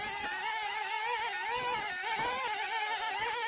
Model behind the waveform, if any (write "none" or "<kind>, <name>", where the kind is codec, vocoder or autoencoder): none